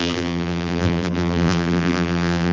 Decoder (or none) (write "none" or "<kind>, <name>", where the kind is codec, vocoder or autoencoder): vocoder, BigVGAN v2